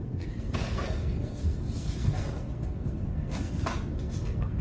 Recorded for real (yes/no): no